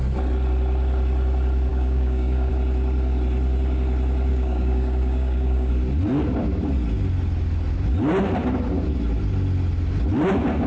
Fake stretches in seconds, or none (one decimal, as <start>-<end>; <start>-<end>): 1.7-2.5; 4.3-5.7